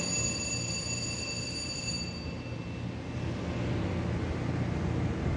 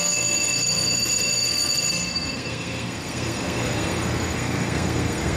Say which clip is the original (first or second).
first